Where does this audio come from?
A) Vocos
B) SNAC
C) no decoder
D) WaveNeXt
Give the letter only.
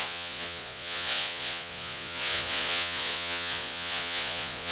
A